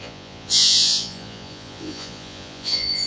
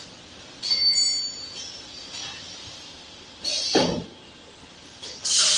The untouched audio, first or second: second